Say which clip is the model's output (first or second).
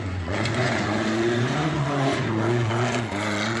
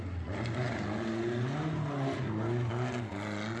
first